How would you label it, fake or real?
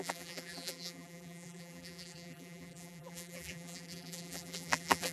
fake